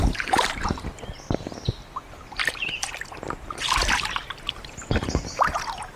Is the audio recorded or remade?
recorded